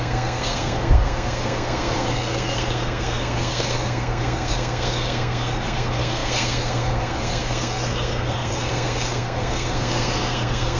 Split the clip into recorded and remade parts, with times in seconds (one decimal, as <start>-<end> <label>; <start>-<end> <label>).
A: 0.0-10.8 remade